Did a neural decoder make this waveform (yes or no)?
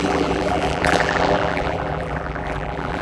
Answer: yes